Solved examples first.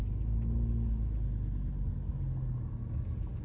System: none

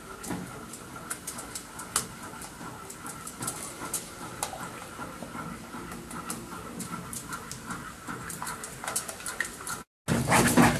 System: none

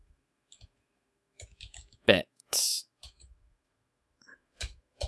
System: autoencoder, DAC-VAE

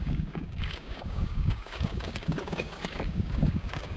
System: codec, DAC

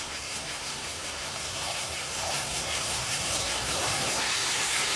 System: codec, SNAC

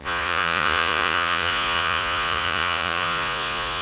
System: vocoder, Vocos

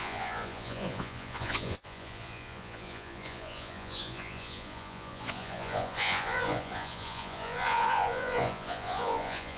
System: vocoder, Vocos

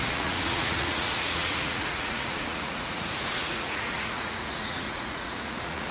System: vocoder, Vocos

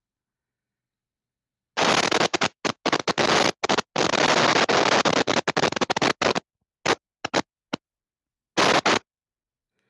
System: none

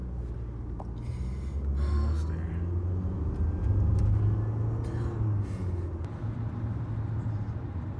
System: none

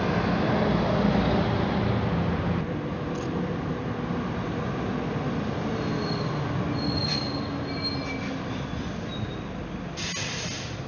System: none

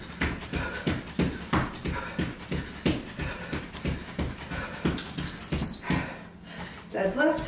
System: none